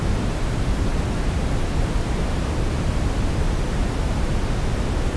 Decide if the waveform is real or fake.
real